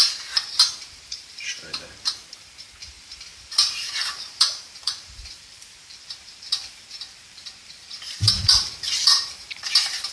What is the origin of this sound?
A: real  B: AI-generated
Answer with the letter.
B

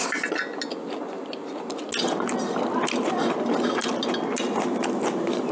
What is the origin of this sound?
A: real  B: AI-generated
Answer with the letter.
A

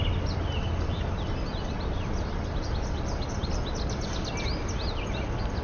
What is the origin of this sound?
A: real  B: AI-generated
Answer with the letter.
A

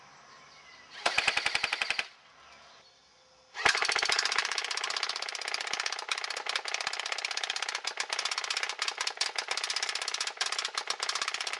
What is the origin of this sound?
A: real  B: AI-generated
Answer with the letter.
B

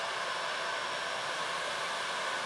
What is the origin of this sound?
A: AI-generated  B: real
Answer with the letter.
B